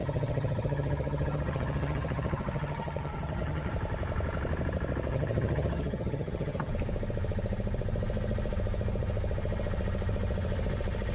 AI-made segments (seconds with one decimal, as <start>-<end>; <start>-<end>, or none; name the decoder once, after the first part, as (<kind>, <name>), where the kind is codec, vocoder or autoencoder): 0.0-3.7 (vocoder, HiFi-GAN); 5.1-6.7